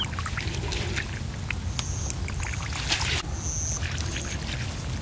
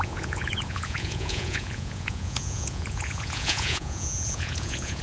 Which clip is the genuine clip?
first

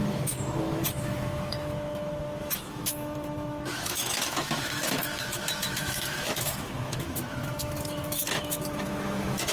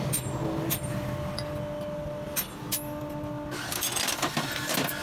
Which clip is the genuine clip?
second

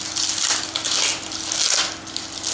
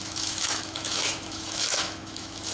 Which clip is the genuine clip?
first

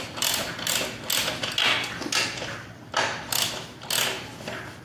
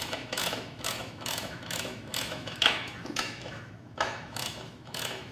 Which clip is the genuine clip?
first